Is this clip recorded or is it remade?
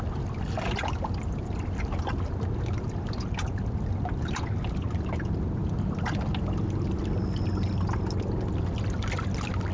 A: recorded